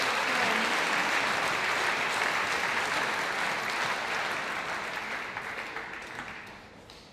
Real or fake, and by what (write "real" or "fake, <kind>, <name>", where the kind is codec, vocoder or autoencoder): real